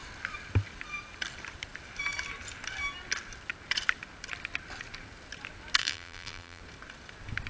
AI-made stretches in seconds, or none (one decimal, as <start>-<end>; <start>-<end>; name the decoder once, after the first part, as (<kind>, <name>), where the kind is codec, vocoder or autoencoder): 5.8-6.6 (vocoder, BigVGAN v2)